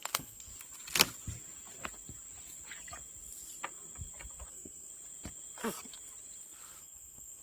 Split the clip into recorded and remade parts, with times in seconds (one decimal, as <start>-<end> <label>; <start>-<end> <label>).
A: 0.0-0.5 remade; 0.5-4.5 recorded; 4.5-4.9 remade; 4.9-6.8 recorded; 6.8-7.4 remade